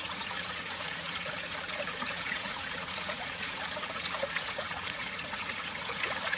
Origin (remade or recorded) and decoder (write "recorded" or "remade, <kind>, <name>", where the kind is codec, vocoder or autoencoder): remade, vocoder, Vocos